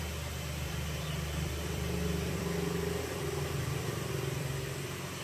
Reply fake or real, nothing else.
fake